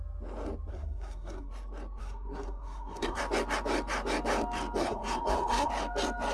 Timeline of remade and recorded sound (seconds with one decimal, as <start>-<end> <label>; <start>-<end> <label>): 0.0-0.7 recorded; 0.7-1.5 remade; 1.5-2.0 recorded; 2.0-3.2 remade; 3.2-4.8 recorded; 4.8-5.7 remade; 5.7-6.3 recorded